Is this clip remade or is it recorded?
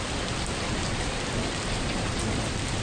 recorded